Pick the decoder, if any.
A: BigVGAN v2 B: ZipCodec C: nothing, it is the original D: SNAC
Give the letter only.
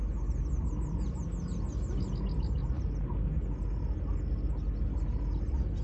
C